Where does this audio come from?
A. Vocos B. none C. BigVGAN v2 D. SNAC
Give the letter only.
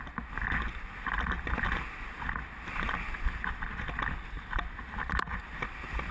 B